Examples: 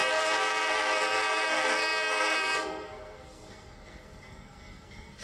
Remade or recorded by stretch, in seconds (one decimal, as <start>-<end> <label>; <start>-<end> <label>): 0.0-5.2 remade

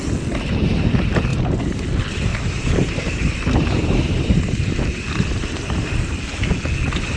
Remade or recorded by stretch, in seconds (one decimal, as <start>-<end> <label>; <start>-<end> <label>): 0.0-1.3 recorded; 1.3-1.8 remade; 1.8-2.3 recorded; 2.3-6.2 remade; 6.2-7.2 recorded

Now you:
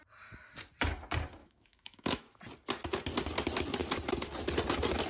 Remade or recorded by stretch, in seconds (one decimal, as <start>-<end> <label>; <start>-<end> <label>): 0.0-1.4 recorded; 1.4-2.4 remade; 2.4-5.1 recorded

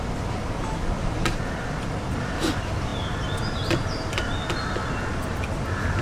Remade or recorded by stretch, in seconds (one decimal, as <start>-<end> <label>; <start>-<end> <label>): 0.0-6.0 recorded

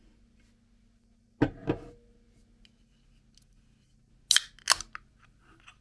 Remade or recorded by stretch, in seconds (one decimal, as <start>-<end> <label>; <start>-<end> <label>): 0.0-5.8 recorded

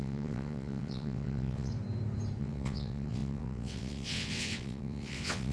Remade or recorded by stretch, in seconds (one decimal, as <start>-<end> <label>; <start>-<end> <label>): 0.0-1.7 remade; 1.7-2.4 recorded; 2.4-5.5 remade